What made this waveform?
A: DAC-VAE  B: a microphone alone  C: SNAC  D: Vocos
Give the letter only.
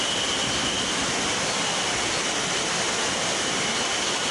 B